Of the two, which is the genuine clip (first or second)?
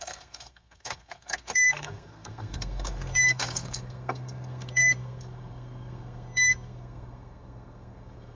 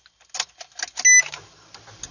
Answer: second